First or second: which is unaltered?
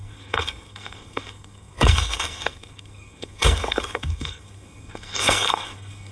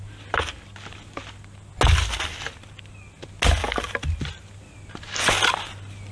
second